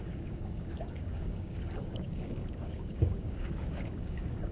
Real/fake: fake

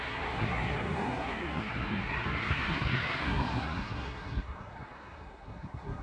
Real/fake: fake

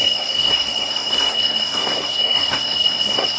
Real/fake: fake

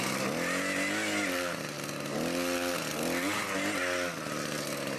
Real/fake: real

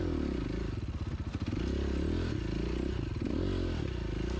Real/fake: real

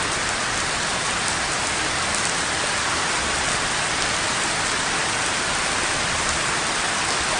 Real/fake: real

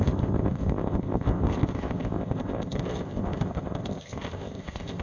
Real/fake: fake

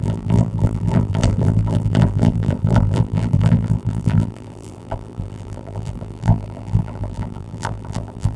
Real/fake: fake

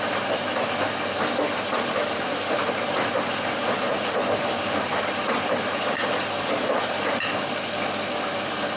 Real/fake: real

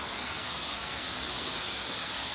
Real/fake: fake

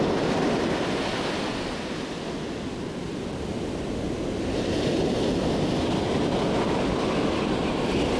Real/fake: real